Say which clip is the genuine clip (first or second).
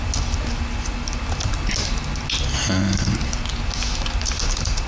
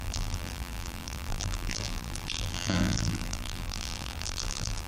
first